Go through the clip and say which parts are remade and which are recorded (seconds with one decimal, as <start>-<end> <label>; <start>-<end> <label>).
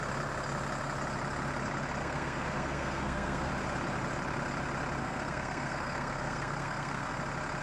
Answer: 0.0-2.0 recorded; 2.0-3.5 remade; 3.5-5.0 recorded; 5.0-7.1 remade; 7.1-7.6 recorded